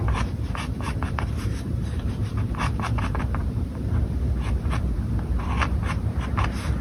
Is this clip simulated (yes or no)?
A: yes